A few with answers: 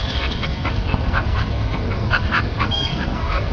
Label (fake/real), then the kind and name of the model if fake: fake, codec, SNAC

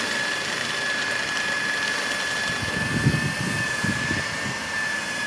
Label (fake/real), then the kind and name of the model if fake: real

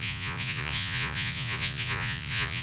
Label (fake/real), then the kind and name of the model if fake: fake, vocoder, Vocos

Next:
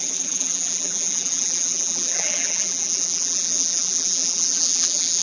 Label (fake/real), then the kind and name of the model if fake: fake, vocoder, BigVGAN v2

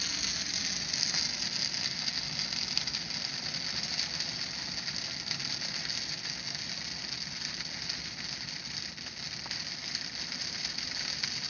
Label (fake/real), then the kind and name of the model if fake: real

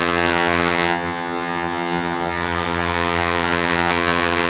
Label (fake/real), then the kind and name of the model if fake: fake, vocoder, HiFi-GAN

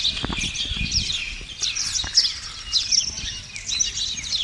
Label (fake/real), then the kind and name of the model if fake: real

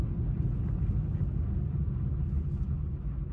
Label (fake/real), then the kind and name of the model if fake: real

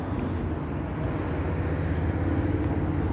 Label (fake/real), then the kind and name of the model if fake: real